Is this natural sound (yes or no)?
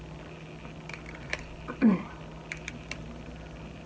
yes